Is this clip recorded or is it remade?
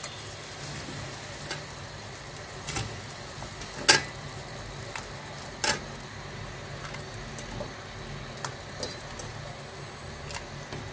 recorded